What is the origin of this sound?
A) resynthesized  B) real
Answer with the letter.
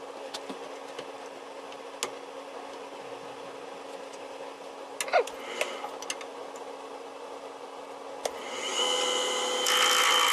B